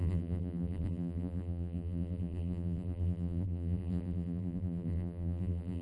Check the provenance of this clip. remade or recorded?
remade